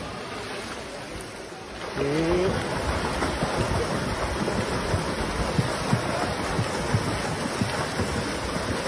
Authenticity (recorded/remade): recorded